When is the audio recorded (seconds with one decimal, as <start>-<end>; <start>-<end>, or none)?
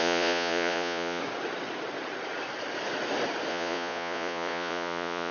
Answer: 1.2-3.5